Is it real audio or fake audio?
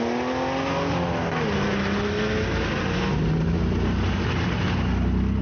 real